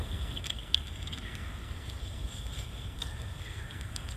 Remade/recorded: remade